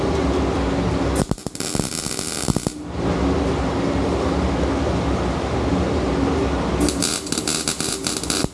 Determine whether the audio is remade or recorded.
recorded